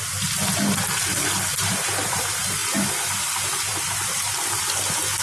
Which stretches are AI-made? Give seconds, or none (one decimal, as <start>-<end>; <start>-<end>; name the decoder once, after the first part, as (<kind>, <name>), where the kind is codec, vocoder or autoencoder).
1.5-2.2 (vocoder, BigVGAN v2); 3.7-4.6